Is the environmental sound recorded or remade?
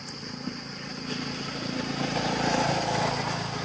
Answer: recorded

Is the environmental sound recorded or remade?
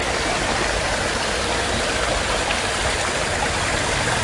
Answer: recorded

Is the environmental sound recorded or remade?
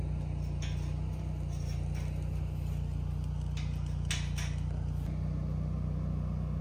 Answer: recorded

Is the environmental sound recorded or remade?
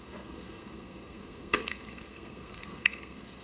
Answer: remade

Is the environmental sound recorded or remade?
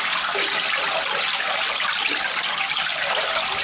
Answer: recorded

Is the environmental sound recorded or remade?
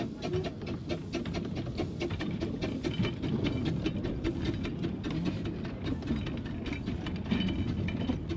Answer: recorded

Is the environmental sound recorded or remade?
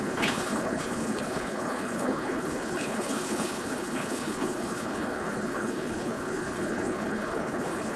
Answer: remade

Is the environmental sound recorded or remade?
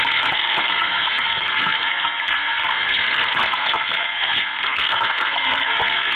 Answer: remade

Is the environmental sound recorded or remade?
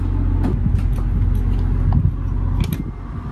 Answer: recorded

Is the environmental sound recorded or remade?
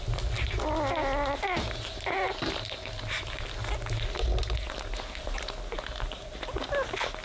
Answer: recorded